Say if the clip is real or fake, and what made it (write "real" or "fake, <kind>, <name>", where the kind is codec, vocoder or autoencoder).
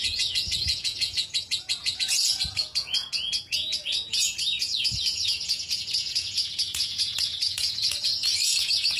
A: fake, vocoder, Vocos